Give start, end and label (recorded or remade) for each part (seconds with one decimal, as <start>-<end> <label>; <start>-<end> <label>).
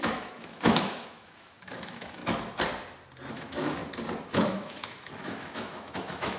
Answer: 0.0-2.2 remade; 2.2-3.3 recorded; 3.3-3.8 remade; 3.8-4.3 recorded; 4.3-6.4 remade